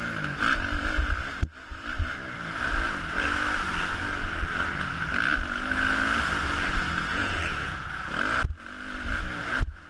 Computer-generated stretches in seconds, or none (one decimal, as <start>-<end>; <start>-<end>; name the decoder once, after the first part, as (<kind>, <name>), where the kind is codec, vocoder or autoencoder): 7.1-7.9 (vocoder, Vocos)